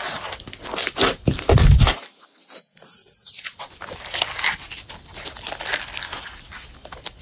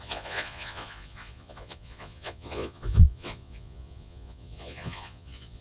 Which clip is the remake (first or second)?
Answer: second